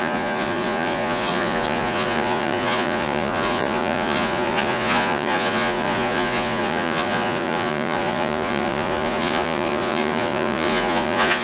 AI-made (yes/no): yes